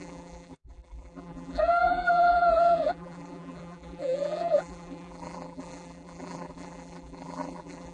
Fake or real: fake